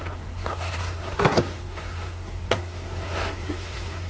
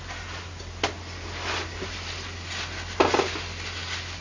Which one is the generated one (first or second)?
first